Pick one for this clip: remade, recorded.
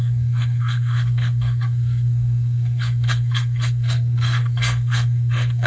remade